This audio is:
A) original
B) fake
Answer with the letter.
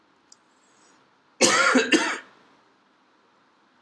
A